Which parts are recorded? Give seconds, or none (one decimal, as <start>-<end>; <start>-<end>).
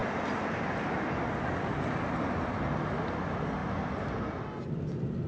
0.0-5.3